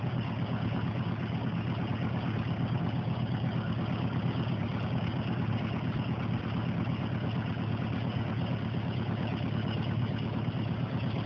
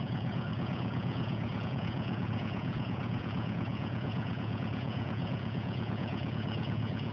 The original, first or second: first